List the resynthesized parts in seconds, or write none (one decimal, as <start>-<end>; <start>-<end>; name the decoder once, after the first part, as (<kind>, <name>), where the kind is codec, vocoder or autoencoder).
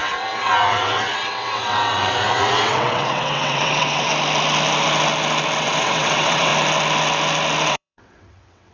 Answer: 0.0-4.1 (vocoder, WaveNeXt); 5.6-6.5; 7.7-8.7